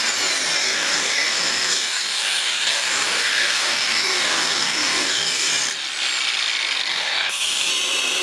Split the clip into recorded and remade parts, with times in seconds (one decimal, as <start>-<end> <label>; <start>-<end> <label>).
0.0-0.6 recorded; 0.6-5.5 remade; 5.5-6.9 recorded; 6.9-7.7 remade; 7.7-8.2 recorded

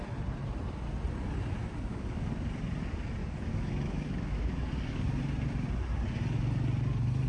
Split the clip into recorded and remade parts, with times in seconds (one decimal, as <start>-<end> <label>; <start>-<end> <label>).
0.0-1.9 recorded; 1.9-2.5 remade; 2.5-3.2 recorded; 3.2-5.2 remade; 5.2-7.3 recorded

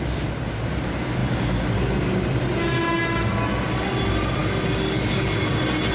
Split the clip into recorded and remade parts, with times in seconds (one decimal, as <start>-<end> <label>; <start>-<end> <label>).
0.0-4.4 recorded; 4.4-5.5 remade; 5.5-5.9 recorded

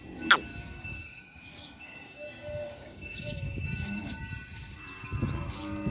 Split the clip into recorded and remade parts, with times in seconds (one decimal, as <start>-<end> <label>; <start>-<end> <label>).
0.0-0.5 recorded; 0.5-4.0 remade; 4.0-5.9 recorded